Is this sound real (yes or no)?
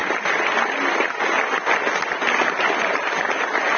yes